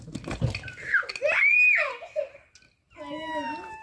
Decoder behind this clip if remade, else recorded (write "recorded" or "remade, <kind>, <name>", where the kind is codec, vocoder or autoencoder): recorded